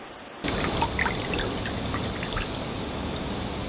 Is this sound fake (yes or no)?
no